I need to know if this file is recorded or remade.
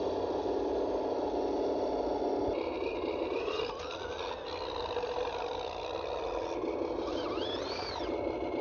recorded